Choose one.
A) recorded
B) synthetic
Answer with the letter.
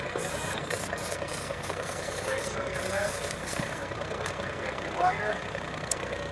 B